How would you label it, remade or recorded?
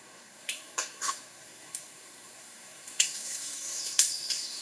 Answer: remade